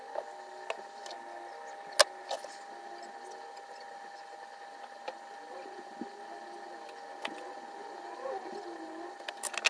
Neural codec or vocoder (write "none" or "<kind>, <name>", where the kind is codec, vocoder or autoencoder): none